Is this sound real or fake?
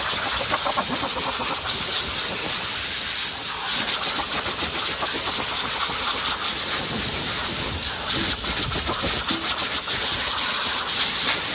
real